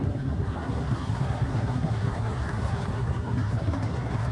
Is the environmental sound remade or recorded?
remade